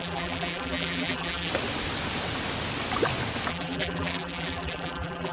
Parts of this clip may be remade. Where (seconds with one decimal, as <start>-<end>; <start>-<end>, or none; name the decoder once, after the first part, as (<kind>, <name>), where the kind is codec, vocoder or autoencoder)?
0.0-1.5 (vocoder, BigVGAN v2); 3.5-5.3